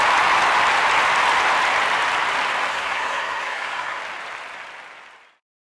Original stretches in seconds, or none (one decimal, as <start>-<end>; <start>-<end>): 0.0-2.7; 4.0-5.6